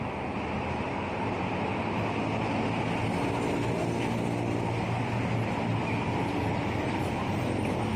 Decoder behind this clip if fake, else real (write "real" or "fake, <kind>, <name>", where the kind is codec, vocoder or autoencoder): real